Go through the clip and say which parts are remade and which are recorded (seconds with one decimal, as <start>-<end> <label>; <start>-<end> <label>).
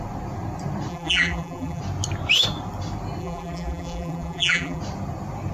0.0-0.9 recorded; 0.9-1.8 remade; 1.8-3.2 recorded; 3.2-4.8 remade; 4.8-5.5 recorded